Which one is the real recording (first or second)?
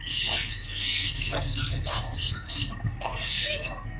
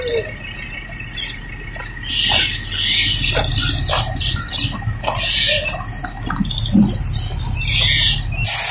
second